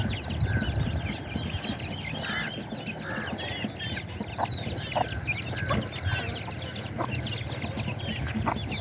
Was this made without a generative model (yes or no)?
yes